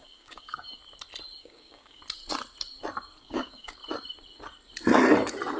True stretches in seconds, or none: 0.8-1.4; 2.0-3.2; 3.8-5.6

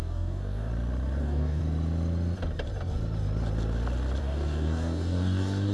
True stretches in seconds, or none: 0.7-1.2; 1.6-4.2